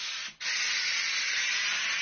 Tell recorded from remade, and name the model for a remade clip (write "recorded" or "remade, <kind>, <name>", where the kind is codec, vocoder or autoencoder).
recorded